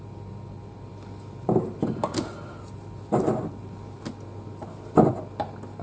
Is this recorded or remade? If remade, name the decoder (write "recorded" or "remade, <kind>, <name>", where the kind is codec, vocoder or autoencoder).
recorded